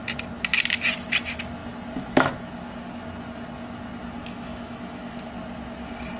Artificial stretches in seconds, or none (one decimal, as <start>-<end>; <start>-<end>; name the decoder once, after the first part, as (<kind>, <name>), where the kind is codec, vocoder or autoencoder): 4.2-5.3 (autoencoder, DAC-VAE)